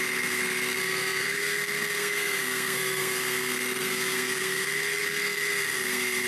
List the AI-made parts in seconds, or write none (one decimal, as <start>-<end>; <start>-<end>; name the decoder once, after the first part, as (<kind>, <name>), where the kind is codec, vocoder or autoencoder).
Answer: 0.0-6.3 (codec, SNAC)